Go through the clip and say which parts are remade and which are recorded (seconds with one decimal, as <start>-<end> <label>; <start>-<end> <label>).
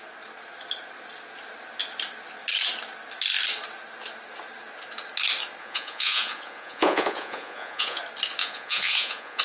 0.0-5.6 recorded; 5.6-8.0 remade; 8.0-8.4 recorded; 8.4-9.4 remade